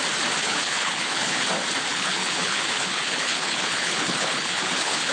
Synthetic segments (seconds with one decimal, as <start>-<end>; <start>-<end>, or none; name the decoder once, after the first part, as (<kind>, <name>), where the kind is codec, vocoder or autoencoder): 0.4-1.5 (codec, HILCodec); 1.9-5.1